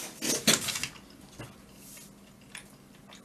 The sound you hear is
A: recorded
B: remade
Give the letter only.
A